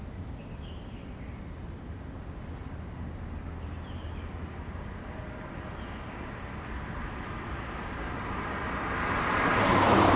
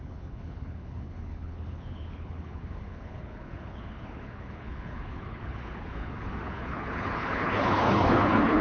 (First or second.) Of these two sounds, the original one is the first